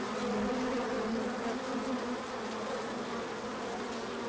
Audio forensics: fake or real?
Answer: real